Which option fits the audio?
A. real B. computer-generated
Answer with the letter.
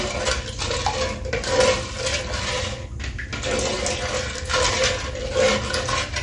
A